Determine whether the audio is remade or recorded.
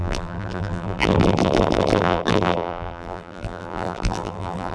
remade